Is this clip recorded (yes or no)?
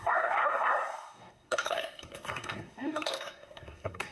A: no